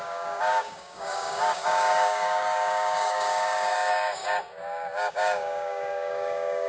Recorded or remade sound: remade